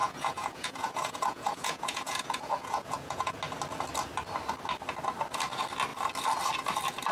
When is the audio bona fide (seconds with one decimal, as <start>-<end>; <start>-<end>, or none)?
3.3-7.1